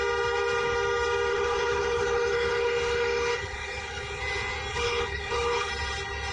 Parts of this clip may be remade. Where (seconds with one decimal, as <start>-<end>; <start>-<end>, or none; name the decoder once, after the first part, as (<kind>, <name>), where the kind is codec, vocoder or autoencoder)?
1.3-4.2 (codec, HILCodec); 4.7-5.7